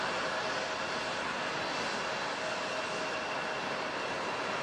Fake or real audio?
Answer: real